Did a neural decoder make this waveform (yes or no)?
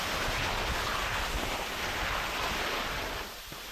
no